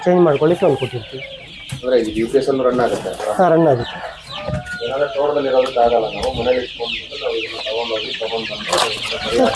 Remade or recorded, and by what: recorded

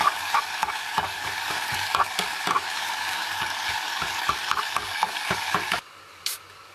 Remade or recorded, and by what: remade, codec, DAC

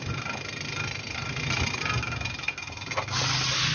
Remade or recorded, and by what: recorded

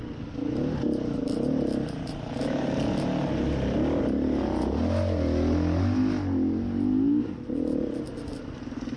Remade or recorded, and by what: recorded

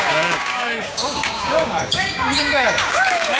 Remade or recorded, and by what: remade, codec, DAC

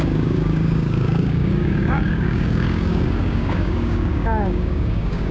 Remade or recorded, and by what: remade, codec, DAC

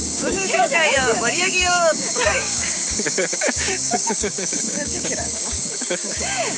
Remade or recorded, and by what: remade, codec, DAC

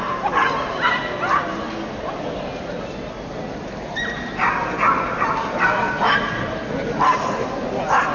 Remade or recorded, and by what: recorded